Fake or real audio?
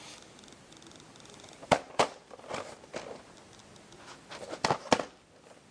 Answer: real